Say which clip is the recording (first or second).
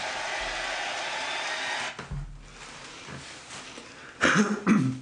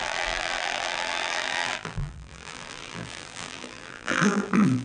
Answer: first